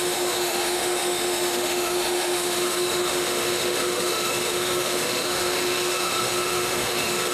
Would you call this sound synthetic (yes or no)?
yes